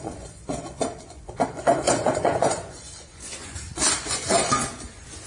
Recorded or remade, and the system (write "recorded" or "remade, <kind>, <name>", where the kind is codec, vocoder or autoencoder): remade, vocoder, Vocos